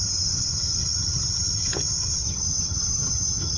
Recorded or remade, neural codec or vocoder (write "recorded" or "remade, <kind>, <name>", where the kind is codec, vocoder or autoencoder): remade, vocoder, HiFi-GAN